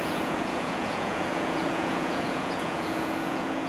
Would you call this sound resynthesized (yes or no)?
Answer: yes